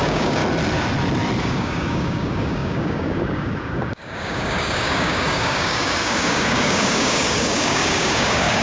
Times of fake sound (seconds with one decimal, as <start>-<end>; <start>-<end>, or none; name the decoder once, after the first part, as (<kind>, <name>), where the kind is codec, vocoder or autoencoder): 0.0-0.4 (codec, DAC); 1.4-8.6